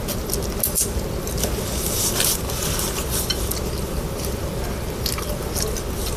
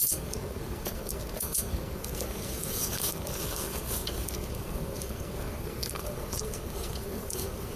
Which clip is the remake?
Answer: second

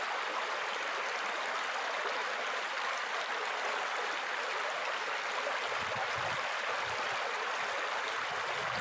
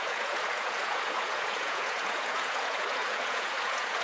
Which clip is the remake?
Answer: second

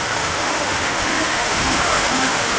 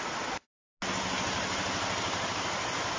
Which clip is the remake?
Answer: first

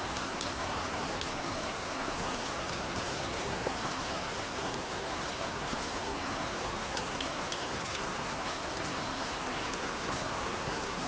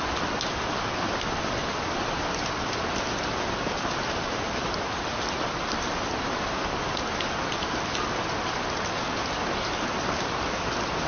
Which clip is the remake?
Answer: first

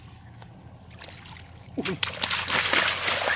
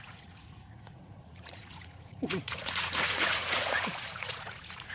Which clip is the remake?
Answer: second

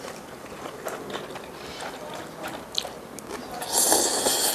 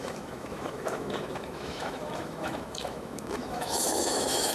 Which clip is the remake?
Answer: second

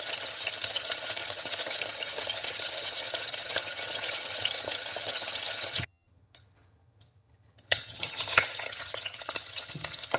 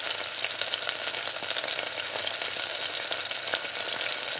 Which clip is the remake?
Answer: first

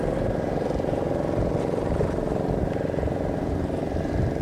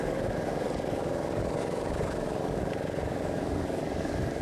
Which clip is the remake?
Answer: second